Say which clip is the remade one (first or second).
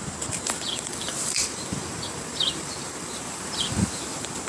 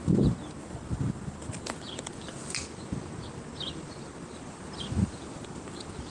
first